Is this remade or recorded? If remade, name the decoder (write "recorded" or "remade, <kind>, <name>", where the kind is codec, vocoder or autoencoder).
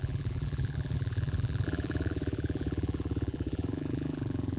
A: remade, vocoder, BigVGAN v2